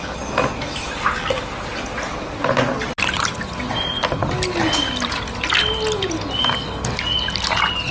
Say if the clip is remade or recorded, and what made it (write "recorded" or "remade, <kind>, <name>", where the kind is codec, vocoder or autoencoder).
recorded